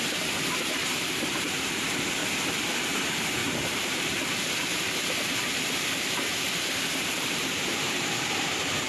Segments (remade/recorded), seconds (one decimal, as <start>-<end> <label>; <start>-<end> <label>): 0.0-2.2 remade; 2.2-2.7 recorded; 2.7-8.9 remade